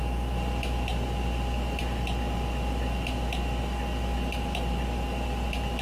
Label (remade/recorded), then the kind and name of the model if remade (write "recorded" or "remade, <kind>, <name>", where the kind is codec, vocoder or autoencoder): recorded